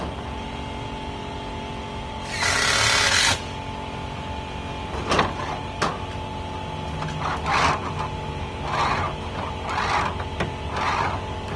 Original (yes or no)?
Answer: yes